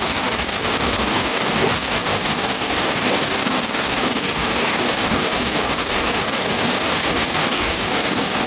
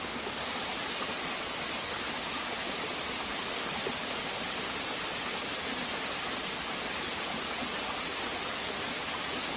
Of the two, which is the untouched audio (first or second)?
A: second